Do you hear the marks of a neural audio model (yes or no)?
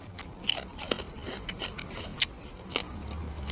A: no